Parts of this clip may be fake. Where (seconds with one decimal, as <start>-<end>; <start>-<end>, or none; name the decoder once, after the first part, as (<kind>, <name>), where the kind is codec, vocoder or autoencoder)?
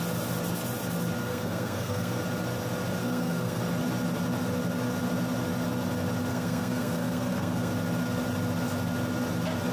1.2-2.1 (codec, SNAC); 3.0-3.6; 6.3-7.7